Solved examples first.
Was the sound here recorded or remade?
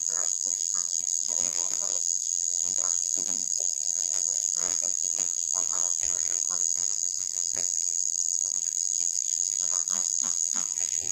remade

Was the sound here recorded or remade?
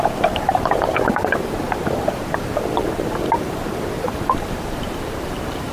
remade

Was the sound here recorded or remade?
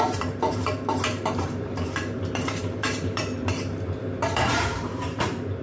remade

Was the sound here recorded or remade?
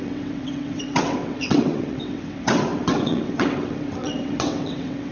remade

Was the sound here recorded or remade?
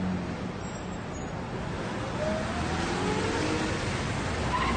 recorded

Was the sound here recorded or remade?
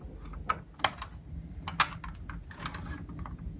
recorded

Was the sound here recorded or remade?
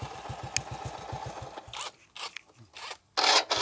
recorded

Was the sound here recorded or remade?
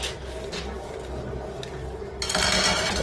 recorded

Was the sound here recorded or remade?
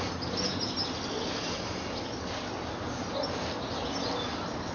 recorded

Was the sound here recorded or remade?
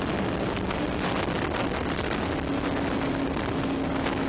recorded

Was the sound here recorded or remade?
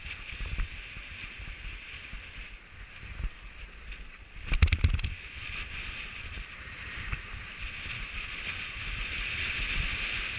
recorded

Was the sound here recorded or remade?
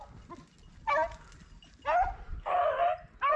recorded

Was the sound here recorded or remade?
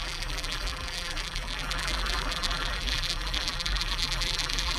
remade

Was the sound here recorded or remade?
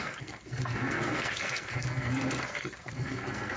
remade